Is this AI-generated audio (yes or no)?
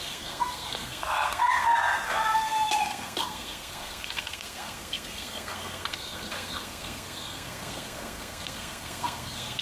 yes